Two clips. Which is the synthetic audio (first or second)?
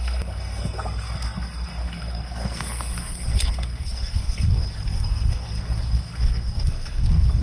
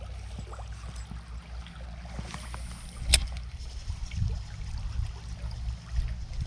first